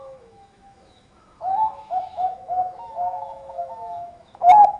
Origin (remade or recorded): remade